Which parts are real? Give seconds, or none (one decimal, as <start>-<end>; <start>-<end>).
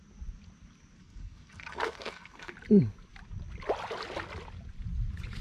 0.0-1.0; 2.5-5.4